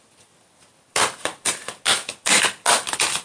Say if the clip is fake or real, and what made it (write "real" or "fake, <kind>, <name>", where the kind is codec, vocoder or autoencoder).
real